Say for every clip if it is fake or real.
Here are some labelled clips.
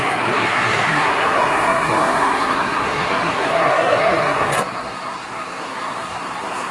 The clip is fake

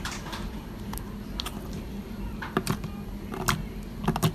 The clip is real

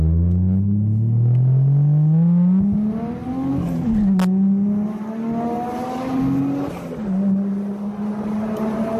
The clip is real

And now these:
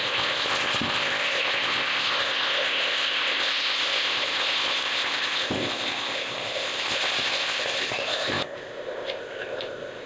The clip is fake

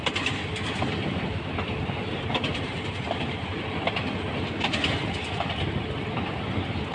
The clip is real